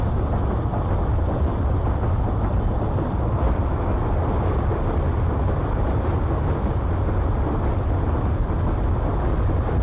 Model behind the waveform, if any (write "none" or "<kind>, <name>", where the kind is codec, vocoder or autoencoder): none